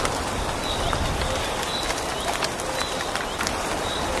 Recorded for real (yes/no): yes